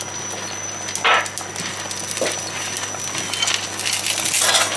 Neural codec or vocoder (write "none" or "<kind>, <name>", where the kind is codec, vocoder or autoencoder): none